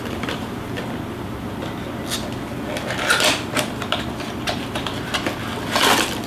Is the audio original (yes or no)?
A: yes